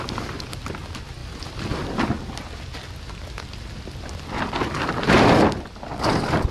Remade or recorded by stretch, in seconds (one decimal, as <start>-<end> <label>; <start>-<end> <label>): 0.0-6.5 recorded